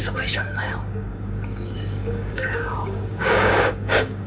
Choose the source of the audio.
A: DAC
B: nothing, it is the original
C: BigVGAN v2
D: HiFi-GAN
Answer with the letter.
A